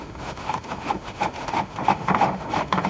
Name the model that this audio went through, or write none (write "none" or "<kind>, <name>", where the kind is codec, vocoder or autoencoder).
autoencoder, DAC-VAE